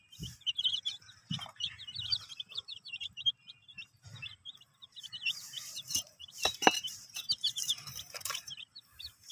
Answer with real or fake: fake